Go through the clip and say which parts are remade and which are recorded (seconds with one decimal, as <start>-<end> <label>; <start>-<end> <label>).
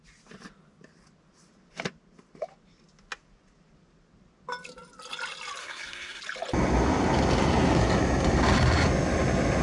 0.0-5.6 recorded; 5.6-6.2 remade; 6.2-9.6 recorded